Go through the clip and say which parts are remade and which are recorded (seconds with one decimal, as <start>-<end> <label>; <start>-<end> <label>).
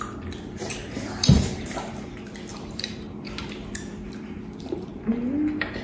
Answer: 0.0-1.5 recorded; 1.5-2.1 remade; 2.1-2.5 recorded; 2.5-5.3 remade; 5.3-5.8 recorded